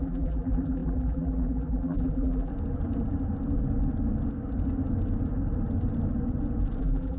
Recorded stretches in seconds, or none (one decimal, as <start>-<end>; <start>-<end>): 2.5-6.8

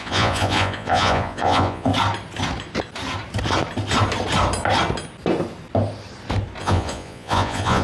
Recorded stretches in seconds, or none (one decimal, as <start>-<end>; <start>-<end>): 1.9-6.6

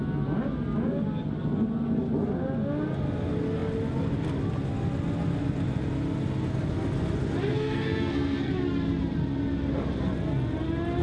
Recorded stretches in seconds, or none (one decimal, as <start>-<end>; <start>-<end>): 0.0-7.5; 8.5-11.0

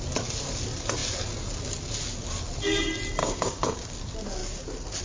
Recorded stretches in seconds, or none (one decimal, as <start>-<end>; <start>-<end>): 0.0-3.2; 3.9-5.0

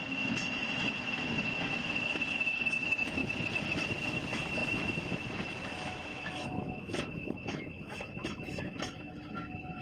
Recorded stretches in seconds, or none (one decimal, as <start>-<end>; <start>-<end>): 3.2-3.9

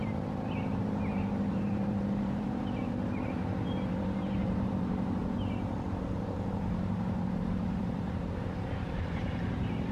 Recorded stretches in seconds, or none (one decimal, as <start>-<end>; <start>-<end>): 0.0-0.8; 5.2-6.0

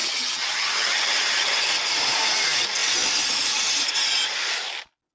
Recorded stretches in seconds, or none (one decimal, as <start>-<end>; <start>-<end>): 1.6-5.1

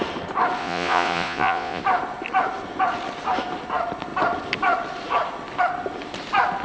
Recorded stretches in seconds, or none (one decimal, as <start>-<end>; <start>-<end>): 0.0-0.6; 1.8-6.6